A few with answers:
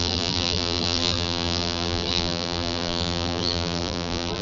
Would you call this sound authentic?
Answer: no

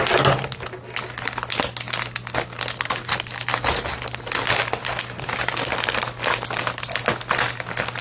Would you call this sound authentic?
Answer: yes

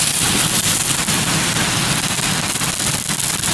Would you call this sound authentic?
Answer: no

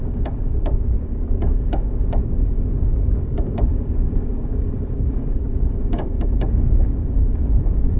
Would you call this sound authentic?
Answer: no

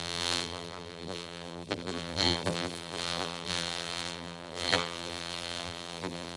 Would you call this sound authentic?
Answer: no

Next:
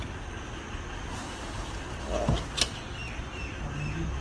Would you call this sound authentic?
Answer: yes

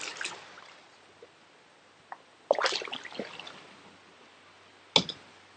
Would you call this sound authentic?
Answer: yes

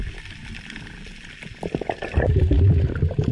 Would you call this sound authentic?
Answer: yes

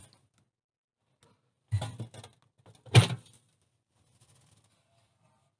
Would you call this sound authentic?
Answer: yes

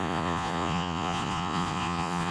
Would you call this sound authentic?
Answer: no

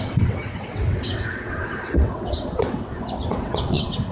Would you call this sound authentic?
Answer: no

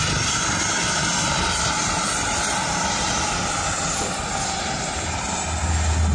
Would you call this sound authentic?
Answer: yes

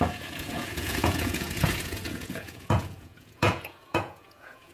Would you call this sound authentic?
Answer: no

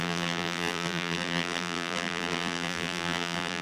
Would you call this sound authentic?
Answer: no